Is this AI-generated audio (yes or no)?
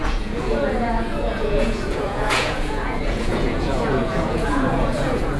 yes